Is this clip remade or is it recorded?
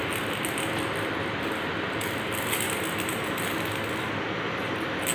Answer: recorded